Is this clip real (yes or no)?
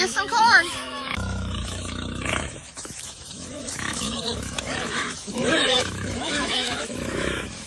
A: no